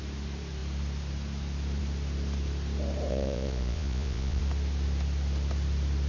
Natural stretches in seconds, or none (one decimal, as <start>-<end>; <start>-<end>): 0.0-3.1; 4.4-6.1